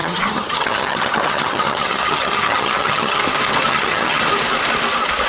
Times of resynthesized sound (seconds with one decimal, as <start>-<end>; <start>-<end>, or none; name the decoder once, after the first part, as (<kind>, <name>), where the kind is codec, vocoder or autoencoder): 0.0-3.2 (vocoder, HiFi-GAN); 3.7-4.2